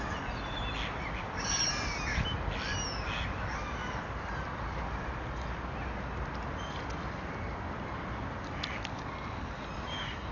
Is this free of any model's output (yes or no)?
yes